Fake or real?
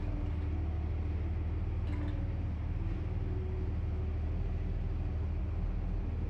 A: real